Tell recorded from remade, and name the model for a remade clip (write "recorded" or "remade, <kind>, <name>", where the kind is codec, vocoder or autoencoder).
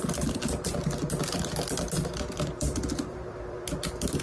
recorded